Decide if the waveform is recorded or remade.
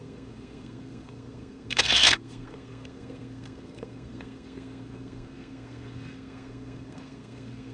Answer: remade